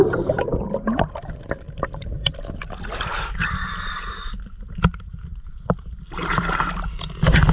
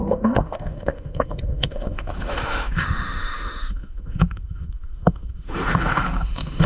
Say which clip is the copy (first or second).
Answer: second